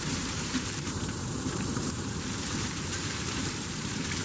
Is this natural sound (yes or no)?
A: no